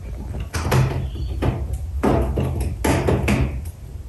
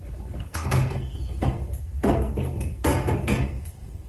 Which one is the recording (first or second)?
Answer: first